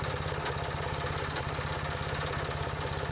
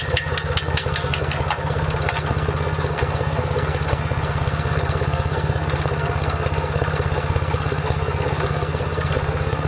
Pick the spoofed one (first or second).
second